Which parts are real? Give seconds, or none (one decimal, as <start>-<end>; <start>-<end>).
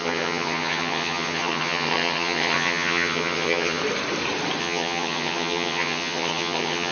3.8-4.6